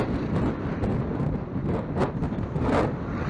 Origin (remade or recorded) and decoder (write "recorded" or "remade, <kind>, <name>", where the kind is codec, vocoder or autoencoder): recorded